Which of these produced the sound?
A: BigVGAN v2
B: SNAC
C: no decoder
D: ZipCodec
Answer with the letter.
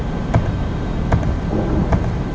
C